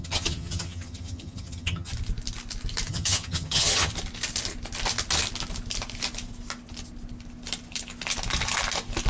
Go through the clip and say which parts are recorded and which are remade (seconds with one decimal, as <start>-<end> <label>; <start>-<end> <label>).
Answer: 0.0-1.9 remade; 1.9-2.9 recorded; 2.9-3.9 remade; 3.9-9.1 recorded